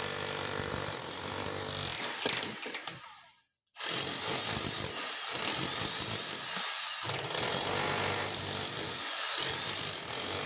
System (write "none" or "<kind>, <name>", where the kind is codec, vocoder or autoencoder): none